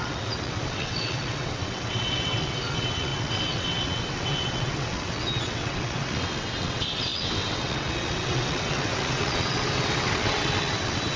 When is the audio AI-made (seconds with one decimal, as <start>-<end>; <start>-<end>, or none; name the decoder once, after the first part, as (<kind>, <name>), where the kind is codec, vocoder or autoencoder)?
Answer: 0.0-11.2 (vocoder, WaveNeXt)